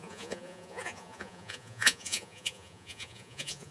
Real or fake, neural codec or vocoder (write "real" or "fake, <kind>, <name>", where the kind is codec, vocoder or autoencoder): fake, vocoder, Vocos